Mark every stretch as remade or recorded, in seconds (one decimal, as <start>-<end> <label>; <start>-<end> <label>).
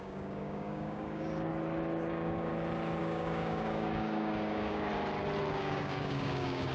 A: 0.0-1.5 remade; 1.5-2.1 recorded; 2.1-2.5 remade; 2.5-3.0 recorded; 3.0-4.9 remade; 4.9-5.5 recorded; 5.5-6.7 remade